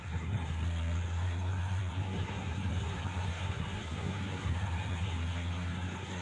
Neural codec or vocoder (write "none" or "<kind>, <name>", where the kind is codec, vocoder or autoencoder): codec, SNAC